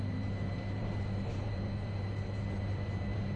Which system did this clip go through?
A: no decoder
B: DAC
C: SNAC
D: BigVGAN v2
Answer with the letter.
D